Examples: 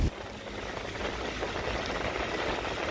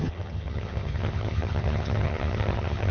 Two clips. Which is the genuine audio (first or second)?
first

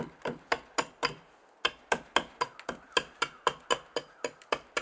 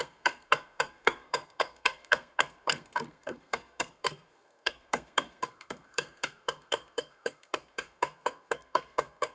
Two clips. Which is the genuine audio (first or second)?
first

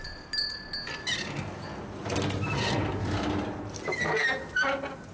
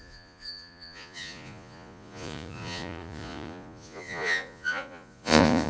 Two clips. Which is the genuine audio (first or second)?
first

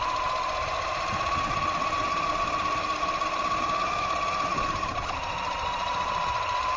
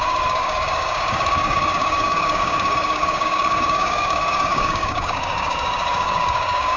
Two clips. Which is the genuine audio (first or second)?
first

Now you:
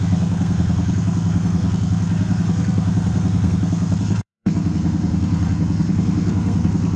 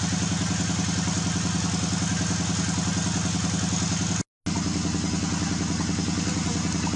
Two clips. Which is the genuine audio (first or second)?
second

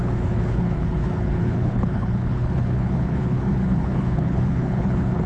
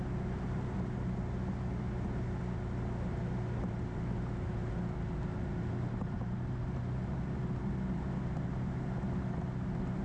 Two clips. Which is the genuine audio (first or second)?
second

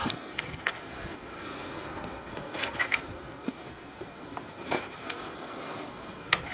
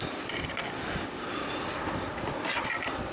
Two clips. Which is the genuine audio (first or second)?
second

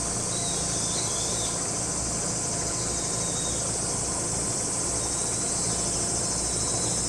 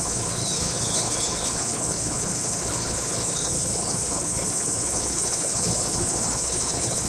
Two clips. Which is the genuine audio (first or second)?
first